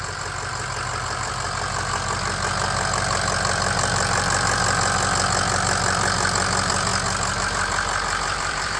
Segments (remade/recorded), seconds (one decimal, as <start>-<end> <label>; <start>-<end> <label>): 0.0-6.9 remade; 6.9-7.4 recorded; 7.4-8.8 remade